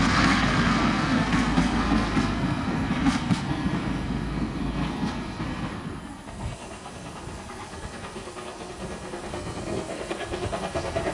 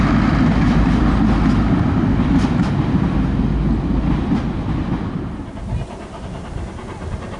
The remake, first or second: first